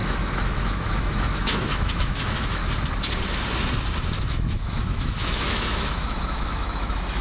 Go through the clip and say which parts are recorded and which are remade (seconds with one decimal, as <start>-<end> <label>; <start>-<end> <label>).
0.0-2.6 remade; 2.6-4.2 recorded; 4.2-7.2 remade